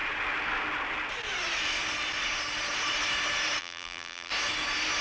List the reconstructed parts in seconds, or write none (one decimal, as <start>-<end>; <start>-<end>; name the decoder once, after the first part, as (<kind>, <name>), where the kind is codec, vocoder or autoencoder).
3.6-4.3 (vocoder, BigVGAN v2)